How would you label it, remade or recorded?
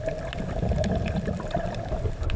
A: recorded